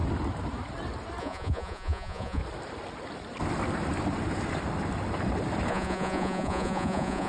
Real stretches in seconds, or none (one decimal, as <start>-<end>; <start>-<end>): 0.0-1.2; 2.4-5.7